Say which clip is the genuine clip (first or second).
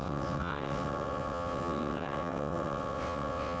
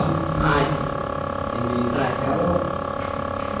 second